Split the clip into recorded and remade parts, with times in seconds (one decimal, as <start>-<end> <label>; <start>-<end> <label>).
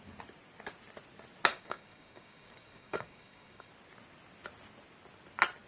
0.0-1.5 recorded; 1.5-3.7 remade; 3.7-5.7 recorded